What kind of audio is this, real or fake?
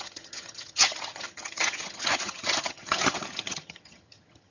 fake